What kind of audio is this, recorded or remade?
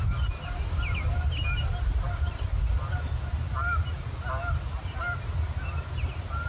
recorded